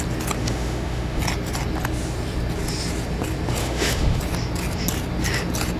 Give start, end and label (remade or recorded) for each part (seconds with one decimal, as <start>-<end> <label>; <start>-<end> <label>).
0.0-0.4 recorded; 0.4-1.2 remade; 1.2-3.6 recorded; 3.6-4.2 remade; 4.2-5.8 recorded

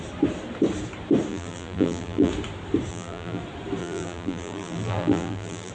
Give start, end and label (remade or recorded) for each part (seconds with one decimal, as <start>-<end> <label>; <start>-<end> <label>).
0.0-1.3 recorded; 1.3-2.3 remade; 2.3-2.9 recorded; 2.9-3.4 remade; 3.4-3.8 recorded; 3.8-5.7 remade

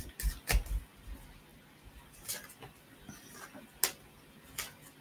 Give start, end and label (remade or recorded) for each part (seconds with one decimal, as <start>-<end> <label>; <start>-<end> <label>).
0.0-5.0 recorded